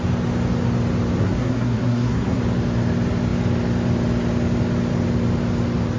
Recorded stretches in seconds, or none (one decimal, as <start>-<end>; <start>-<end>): 0.0-1.2; 2.4-6.0